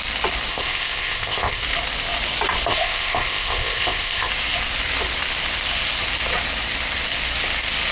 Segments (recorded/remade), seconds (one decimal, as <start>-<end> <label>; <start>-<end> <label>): 0.0-0.5 recorded; 0.5-1.6 remade; 1.6-2.7 recorded; 2.7-4.3 remade; 4.3-7.9 recorded